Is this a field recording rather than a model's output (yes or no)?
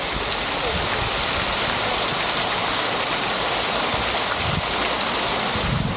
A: yes